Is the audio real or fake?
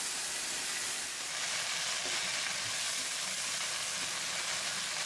real